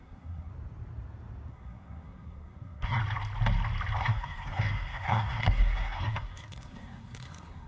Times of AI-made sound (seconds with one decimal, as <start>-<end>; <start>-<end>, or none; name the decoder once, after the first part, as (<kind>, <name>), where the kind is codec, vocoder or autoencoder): 0.0-0.5 (codec, SNAC); 1.5-3.0; 4.0-7.7